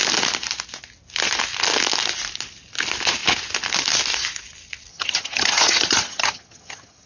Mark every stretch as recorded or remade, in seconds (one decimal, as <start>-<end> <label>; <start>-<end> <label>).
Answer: 0.0-4.9 recorded; 4.9-7.1 remade